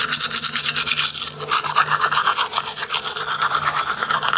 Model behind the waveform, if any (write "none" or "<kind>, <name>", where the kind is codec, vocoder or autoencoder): none